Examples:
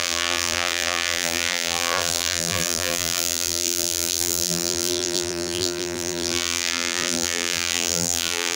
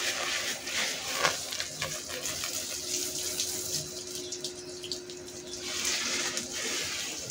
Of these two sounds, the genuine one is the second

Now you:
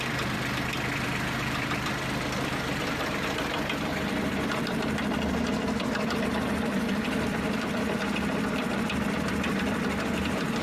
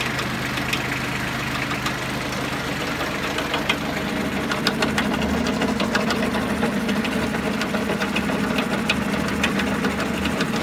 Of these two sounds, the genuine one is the second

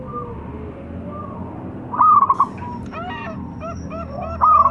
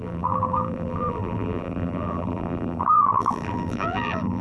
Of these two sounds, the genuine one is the first